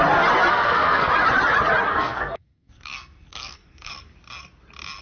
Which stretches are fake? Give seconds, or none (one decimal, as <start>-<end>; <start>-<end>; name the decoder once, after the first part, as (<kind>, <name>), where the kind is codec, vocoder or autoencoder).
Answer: 0.5-1.1 (codec, SNAC); 1.9-3.9